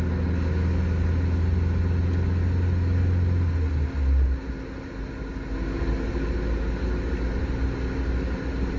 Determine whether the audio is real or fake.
real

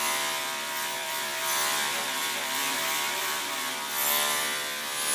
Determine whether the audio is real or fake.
fake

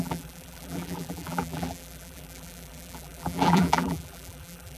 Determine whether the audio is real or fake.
fake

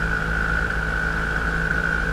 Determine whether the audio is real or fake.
real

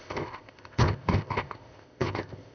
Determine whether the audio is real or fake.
fake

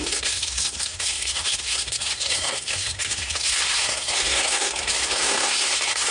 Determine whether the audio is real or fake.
fake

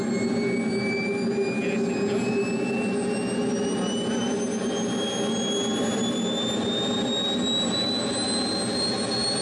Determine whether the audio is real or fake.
real